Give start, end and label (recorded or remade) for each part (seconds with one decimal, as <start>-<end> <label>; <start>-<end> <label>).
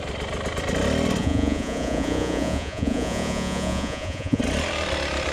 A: 0.0-1.2 recorded; 1.2-4.4 remade; 4.4-5.3 recorded